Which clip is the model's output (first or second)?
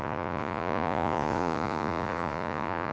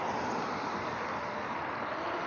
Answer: first